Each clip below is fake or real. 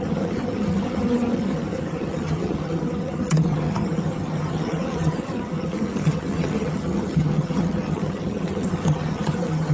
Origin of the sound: fake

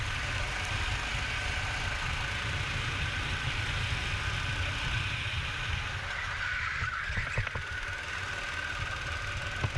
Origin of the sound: real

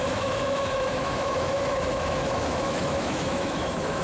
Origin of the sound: fake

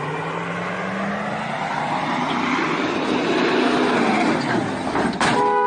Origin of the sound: real